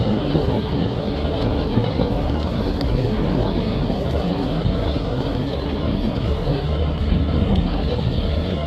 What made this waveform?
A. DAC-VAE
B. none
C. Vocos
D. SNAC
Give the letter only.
D